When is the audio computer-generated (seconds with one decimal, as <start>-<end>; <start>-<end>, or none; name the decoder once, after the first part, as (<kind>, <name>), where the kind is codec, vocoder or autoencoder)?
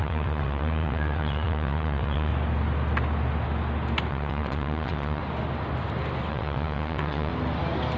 0.0-2.3 (vocoder, WaveNeXt); 4.1-5.2; 6.3-7.3